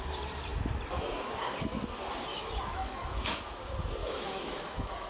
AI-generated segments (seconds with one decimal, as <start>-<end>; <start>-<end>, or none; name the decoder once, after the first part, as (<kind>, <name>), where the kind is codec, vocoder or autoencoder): 2.3-3.4 (autoencoder, DAC-VAE); 4.0-5.1